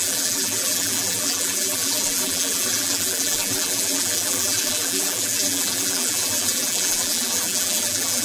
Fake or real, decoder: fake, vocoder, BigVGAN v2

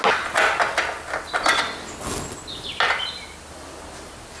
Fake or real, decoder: real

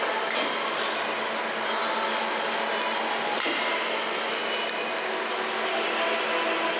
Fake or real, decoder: real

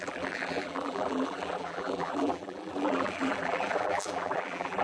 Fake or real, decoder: fake, vocoder, BigVGAN v2